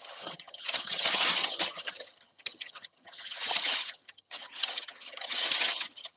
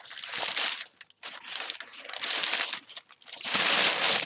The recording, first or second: second